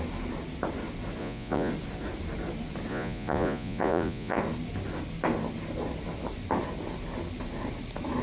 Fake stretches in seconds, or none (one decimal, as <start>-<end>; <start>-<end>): 1.2-1.7; 2.9-4.4